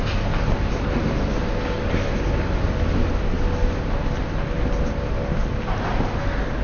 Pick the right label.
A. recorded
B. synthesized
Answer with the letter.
A